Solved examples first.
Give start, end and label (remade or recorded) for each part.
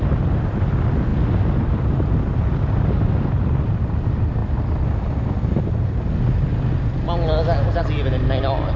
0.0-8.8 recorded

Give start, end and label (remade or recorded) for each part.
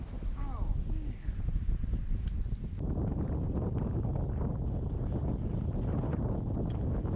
0.0-7.2 recorded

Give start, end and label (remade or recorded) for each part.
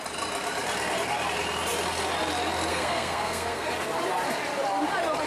0.0-2.7 recorded; 2.7-3.7 remade; 3.7-5.3 recorded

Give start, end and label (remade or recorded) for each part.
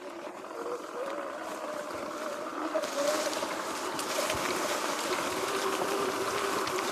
0.0-6.9 recorded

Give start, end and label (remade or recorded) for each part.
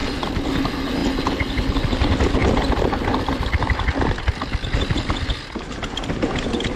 0.0-6.8 recorded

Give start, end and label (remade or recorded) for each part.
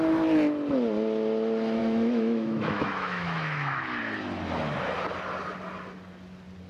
0.0-1.8 recorded; 1.8-4.0 remade; 4.0-6.7 recorded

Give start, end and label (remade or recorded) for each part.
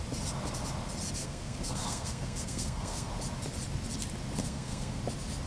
0.0-1.2 recorded; 1.2-3.1 remade; 3.1-4.4 recorded; 4.4-5.0 remade; 5.0-5.5 recorded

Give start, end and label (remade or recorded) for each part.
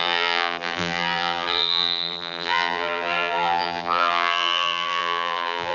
0.0-5.7 remade